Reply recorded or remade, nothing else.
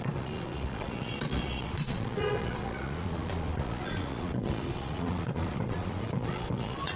remade